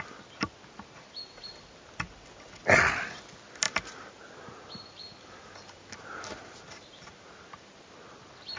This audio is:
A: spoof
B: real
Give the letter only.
B